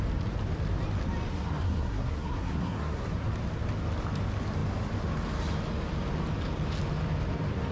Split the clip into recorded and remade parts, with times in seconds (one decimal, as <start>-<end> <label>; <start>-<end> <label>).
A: 0.0-1.3 recorded; 1.3-3.1 remade; 3.1-7.7 recorded